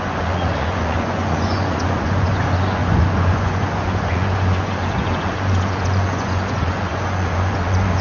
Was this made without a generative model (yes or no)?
no